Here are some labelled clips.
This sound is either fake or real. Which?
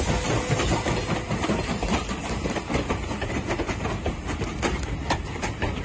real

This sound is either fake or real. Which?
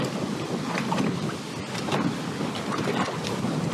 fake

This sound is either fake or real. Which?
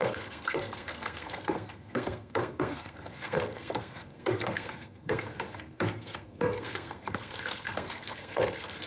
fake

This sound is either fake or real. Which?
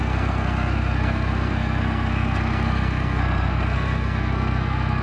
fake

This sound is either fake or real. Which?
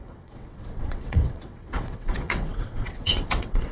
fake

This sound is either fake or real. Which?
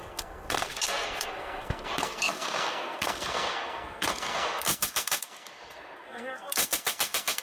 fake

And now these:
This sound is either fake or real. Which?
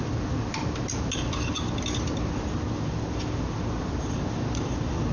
real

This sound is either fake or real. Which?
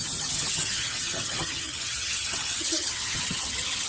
fake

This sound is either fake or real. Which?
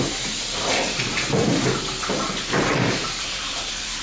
fake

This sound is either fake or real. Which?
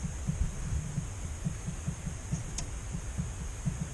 real